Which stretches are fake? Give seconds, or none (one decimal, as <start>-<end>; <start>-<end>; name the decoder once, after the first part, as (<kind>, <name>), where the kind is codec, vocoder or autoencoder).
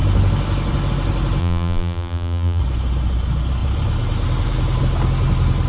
1.4-2.6 (vocoder, BigVGAN v2)